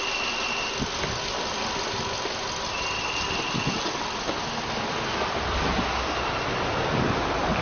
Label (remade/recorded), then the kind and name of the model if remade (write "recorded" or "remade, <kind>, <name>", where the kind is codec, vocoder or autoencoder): recorded